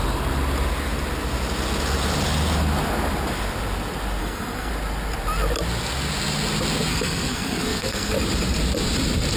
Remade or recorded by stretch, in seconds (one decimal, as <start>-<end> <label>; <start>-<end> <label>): 0.0-4.2 recorded; 4.2-4.7 remade; 4.7-6.9 recorded; 6.9-8.1 remade; 8.1-9.4 recorded